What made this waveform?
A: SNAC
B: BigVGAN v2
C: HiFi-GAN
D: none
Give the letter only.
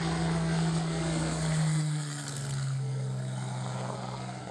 A